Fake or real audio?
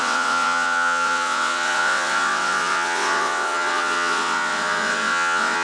fake